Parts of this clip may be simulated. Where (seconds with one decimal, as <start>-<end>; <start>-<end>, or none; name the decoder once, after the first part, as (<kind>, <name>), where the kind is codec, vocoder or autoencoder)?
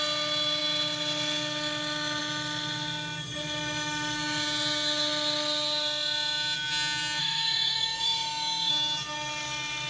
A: 7.2-8.7 (autoencoder, DAC-VAE)